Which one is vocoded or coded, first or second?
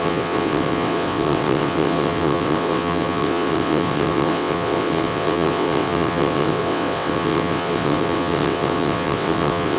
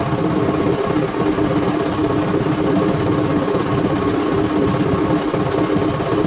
first